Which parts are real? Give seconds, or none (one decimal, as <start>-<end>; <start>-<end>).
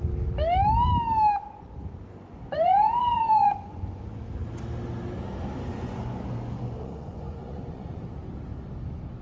0.0-2.1; 4.0-5.7; 8.0-9.2